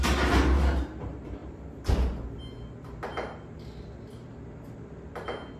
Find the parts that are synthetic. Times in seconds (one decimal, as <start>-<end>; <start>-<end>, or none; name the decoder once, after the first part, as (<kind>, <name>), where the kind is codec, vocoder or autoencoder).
none